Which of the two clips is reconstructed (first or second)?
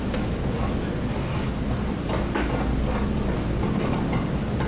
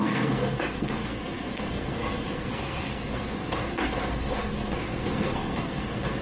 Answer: second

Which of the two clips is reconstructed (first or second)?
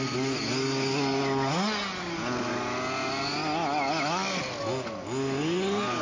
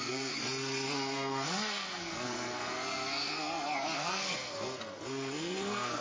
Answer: second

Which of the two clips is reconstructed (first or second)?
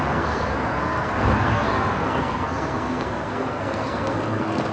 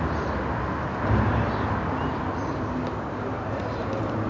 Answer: first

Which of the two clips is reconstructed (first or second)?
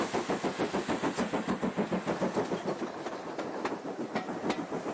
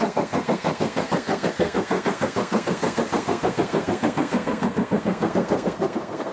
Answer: second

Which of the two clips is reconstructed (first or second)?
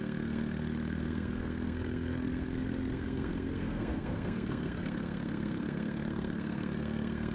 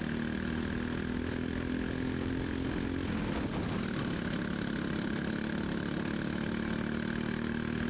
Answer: first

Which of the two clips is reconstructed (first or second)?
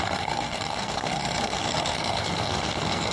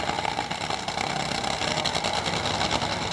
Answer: first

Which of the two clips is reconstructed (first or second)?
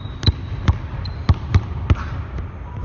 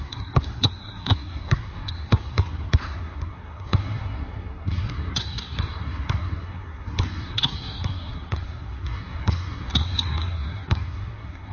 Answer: second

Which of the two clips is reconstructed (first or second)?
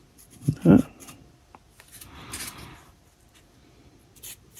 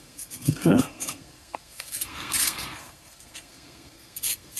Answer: second